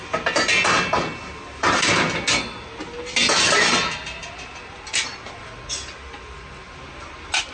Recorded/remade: recorded